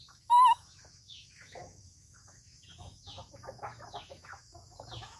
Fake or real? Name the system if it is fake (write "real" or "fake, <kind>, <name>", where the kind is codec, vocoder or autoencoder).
fake, autoencoder, DAC-VAE